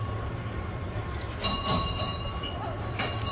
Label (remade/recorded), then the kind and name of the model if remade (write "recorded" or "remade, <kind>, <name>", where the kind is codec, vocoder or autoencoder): remade, vocoder, BigVGAN v2